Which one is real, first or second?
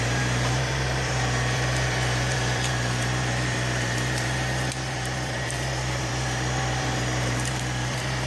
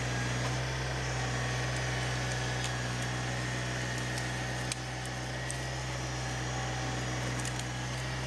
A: second